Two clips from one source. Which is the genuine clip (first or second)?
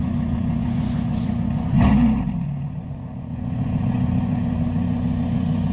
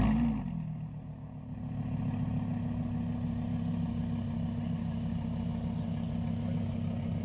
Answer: second